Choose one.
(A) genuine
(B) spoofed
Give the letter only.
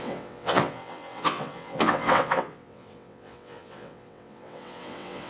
B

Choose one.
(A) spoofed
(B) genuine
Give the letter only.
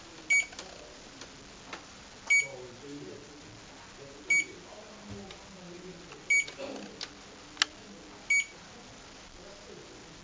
B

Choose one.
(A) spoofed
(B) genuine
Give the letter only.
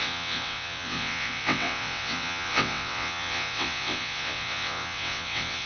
A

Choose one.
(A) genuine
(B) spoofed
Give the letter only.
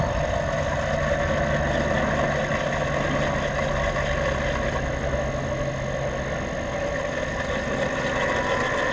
A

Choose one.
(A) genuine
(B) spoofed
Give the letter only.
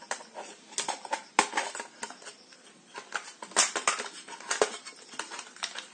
A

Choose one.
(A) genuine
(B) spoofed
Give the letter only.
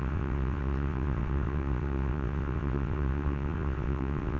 B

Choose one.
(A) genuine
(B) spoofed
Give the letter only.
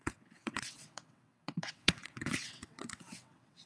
B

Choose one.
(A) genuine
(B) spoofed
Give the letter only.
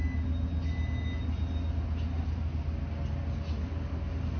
A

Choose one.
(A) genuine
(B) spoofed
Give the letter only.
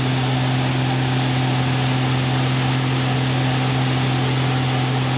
A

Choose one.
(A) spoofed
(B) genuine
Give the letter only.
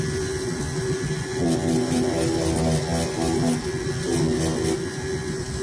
B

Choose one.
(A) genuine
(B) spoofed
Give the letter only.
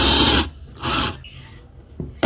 A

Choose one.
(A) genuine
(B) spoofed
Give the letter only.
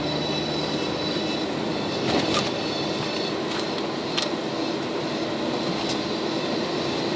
A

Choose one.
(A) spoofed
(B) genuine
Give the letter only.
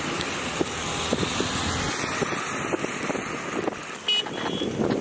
B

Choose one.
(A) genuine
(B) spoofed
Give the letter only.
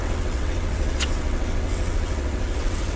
B